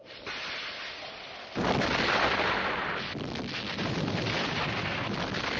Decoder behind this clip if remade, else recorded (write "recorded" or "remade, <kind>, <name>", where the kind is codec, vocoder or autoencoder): recorded